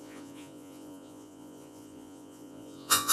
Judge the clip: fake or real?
fake